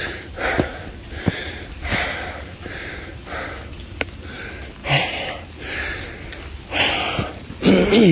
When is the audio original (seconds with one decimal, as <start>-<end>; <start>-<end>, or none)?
0.0-8.1